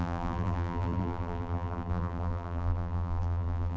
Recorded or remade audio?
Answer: remade